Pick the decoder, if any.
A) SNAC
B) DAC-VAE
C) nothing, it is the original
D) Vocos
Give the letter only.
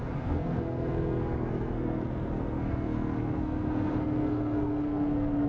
A